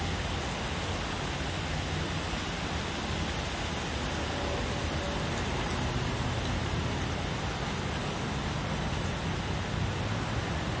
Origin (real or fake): real